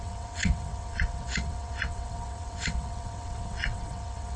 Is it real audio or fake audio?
fake